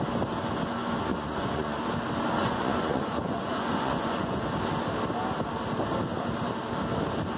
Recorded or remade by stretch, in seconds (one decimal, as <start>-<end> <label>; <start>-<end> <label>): 0.0-1.1 recorded; 1.1-1.8 remade; 1.8-2.4 recorded; 2.4-4.4 remade; 4.4-7.4 recorded